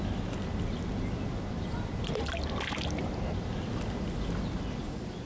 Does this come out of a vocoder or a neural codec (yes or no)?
no